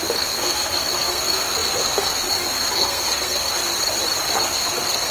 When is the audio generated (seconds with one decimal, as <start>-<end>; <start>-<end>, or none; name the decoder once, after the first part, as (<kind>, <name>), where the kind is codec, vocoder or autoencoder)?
0.0-3.7 (codec, SNAC); 4.4-5.1